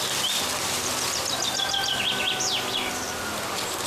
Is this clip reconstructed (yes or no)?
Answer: yes